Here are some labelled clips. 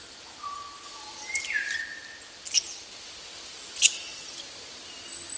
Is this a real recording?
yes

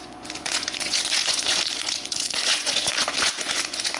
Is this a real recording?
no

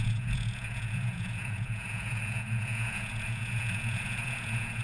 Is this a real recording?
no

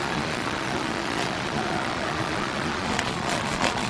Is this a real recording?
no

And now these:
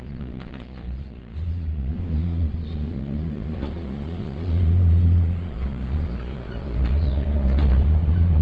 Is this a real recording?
no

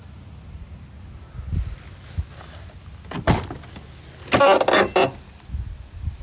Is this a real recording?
yes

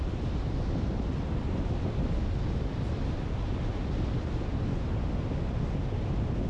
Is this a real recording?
yes